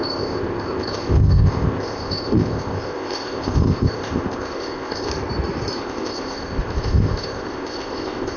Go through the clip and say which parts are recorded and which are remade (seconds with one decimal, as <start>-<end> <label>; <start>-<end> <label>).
0.0-5.1 remade; 5.1-5.8 recorded; 5.8-8.4 remade